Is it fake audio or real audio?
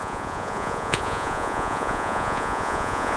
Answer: fake